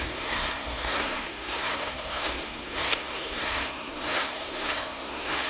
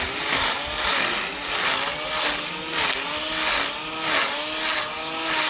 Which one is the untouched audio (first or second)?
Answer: second